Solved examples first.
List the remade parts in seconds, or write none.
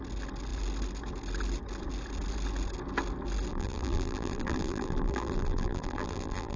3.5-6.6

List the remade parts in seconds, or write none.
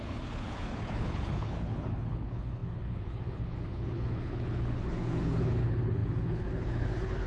0.0-7.3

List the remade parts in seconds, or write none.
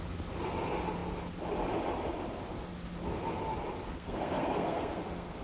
3.9-5.4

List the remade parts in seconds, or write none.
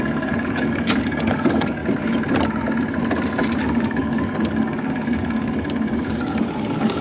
0.0-1.8; 3.6-7.0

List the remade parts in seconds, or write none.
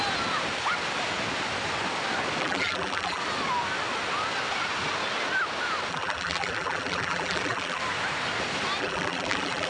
2.4-3.2; 5.9-7.8; 8.8-9.7